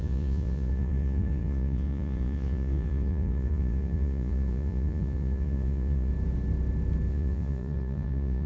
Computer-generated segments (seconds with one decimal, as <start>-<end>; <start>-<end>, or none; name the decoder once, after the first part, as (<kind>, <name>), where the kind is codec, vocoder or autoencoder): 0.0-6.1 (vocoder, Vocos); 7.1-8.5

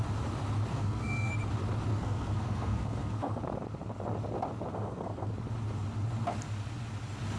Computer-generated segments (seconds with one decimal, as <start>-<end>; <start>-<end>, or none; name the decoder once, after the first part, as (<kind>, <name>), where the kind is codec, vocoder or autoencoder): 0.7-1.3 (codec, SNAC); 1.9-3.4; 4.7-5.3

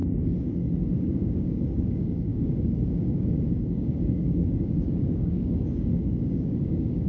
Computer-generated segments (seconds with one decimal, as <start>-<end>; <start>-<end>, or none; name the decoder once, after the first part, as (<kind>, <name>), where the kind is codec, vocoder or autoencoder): 1.0-7.1 (codec, DAC)

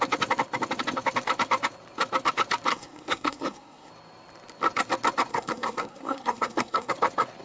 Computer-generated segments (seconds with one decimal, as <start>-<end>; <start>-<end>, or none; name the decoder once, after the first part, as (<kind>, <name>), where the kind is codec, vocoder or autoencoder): 2.7-3.9 (codec, SNAC); 5.3-6.9

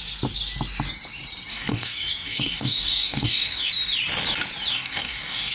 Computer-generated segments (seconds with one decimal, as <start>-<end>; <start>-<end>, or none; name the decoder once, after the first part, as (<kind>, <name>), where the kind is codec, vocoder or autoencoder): 1.5-3.7 (codec, DAC); 4.7-5.5

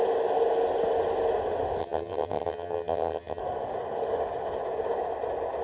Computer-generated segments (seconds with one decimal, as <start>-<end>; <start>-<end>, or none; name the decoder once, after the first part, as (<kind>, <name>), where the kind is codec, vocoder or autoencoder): 1.8-3.4 (vocoder, HiFi-GAN)

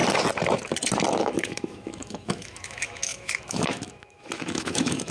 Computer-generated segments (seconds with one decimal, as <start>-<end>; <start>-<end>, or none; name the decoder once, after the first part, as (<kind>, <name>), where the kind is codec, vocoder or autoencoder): 1.2-5.1 (autoencoder, DAC-VAE)

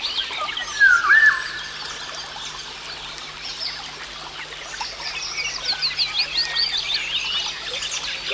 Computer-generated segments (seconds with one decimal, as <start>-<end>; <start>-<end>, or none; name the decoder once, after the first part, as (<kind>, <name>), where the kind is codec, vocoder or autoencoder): none